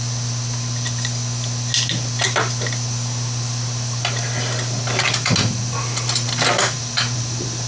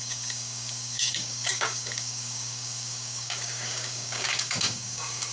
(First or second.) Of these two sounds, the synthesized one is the second